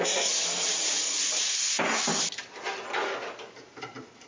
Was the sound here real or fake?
real